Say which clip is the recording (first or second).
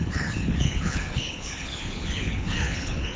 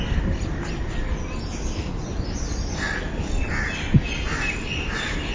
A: second